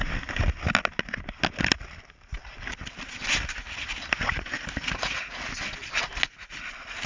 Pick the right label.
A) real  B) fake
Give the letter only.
A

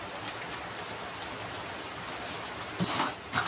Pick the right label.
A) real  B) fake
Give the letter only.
A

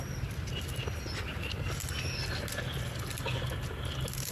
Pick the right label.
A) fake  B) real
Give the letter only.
B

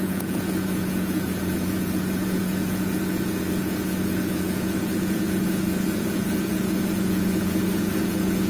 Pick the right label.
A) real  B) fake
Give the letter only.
B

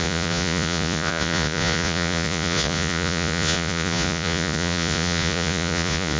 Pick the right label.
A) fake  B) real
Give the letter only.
A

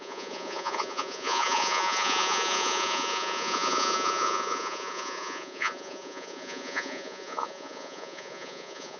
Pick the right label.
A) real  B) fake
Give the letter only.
B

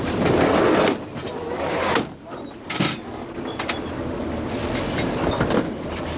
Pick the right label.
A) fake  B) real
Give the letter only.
B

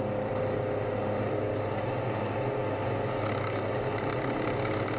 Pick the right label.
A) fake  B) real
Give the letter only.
B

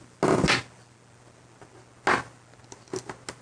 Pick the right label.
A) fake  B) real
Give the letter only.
B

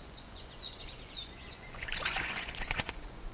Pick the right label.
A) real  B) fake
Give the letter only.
B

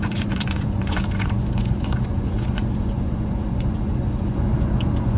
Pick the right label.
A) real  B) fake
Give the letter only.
B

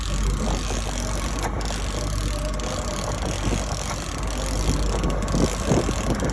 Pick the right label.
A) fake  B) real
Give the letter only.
B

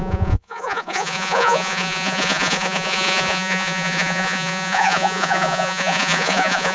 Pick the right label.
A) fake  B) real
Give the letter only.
A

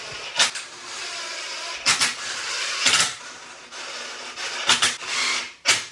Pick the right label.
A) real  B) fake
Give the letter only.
A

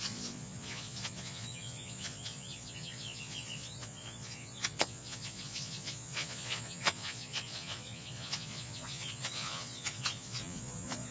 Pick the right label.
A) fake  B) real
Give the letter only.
A